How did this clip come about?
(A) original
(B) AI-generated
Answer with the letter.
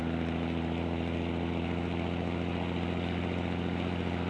A